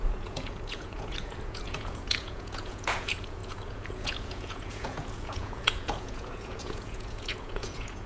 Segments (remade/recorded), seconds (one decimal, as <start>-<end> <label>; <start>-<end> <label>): 0.0-8.1 remade